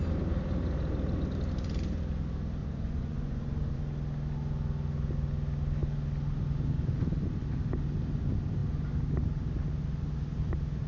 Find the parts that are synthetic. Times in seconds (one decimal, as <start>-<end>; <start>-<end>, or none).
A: 2.6-3.8